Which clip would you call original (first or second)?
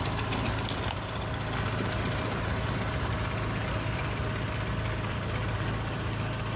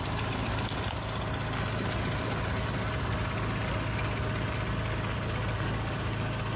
second